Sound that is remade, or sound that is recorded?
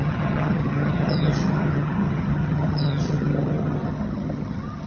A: remade